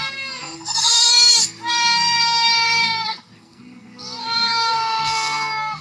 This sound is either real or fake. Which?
fake